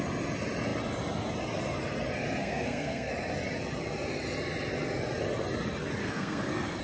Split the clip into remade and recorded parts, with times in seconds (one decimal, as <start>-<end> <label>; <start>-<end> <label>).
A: 0.0-2.4 recorded; 2.4-3.1 remade; 3.1-6.0 recorded; 6.0-6.8 remade